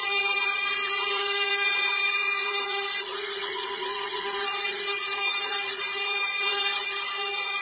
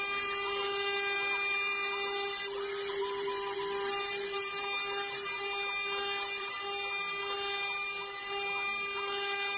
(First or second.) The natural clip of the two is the second